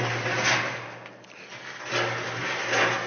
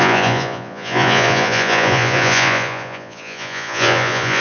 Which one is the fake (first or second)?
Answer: second